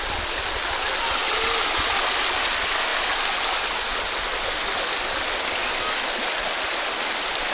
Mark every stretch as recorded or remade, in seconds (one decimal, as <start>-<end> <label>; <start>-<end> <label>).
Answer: 0.0-7.5 recorded